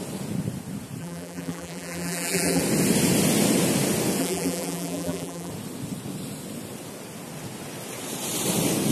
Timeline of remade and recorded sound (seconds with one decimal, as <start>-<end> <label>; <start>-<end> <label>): 0.0-1.0 recorded; 1.0-2.6 remade; 2.6-4.2 recorded; 4.2-5.5 remade; 5.5-8.9 recorded